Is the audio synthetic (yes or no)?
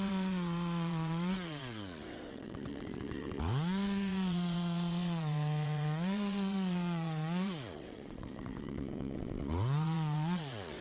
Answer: yes